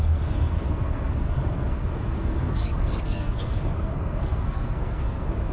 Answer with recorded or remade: remade